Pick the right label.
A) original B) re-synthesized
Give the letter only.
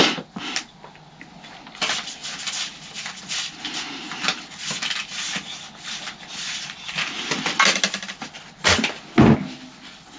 A